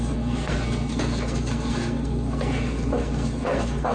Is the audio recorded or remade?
remade